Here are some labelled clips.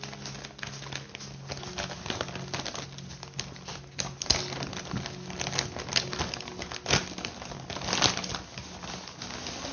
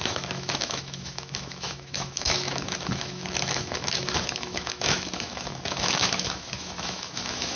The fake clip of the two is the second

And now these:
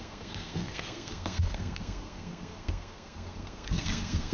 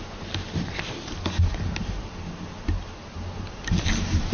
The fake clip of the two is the first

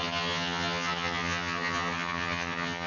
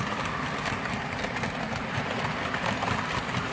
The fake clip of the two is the first